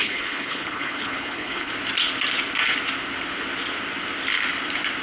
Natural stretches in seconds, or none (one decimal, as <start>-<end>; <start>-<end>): 1.7-5.0